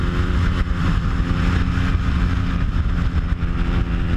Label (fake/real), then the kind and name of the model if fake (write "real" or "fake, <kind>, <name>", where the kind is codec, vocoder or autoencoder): real